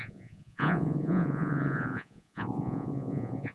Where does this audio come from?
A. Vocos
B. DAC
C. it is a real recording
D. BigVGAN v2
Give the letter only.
A